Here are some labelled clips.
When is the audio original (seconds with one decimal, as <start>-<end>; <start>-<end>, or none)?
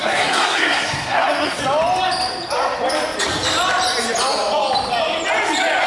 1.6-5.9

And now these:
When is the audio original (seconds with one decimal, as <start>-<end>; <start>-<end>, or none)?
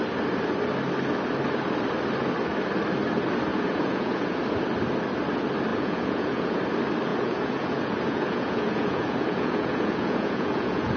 0.0-3.5; 4.4-5.7; 6.6-7.1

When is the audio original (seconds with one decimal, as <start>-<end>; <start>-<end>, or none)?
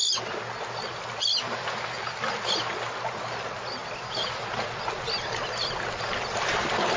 0.0-7.0